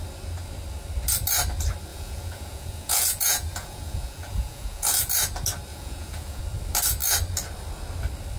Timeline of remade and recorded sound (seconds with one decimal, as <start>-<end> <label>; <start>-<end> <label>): 0.0-1.9 recorded; 1.9-5.1 remade; 5.1-5.7 recorded; 5.7-6.4 remade; 6.4-8.4 recorded